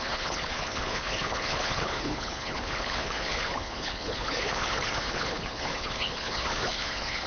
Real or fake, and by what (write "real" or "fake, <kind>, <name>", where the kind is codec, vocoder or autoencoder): fake, codec, HILCodec